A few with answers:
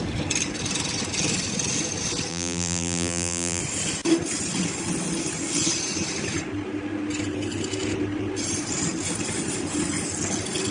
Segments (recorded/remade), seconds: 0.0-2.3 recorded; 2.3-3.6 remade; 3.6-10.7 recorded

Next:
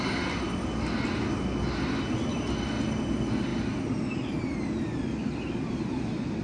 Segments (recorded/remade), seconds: 0.0-3.5 recorded; 3.5-5.5 remade; 5.5-6.4 recorded

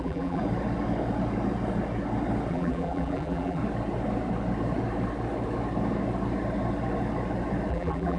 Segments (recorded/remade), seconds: 0.0-0.4 remade; 0.4-2.5 recorded; 2.5-3.6 remade; 3.6-7.7 recorded; 7.7-8.2 remade

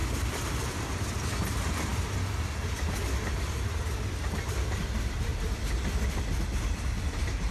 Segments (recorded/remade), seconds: 0.0-7.5 recorded

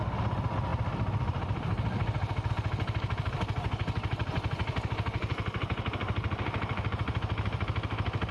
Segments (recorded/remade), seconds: 0.0-0.7 recorded; 0.7-2.5 remade; 2.5-8.3 recorded

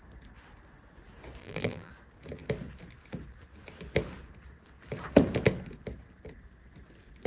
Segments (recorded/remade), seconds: 0.0-1.4 recorded; 1.4-1.9 remade; 1.9-7.3 recorded